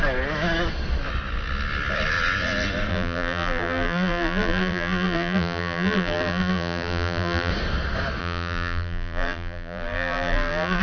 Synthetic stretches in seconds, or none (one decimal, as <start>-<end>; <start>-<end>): 2.9-7.5; 8.2-10.8